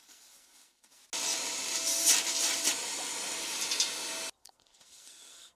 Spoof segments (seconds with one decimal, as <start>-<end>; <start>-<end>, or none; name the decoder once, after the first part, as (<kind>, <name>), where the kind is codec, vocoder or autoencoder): 0.0-1.0 (codec, SNAC); 4.4-5.6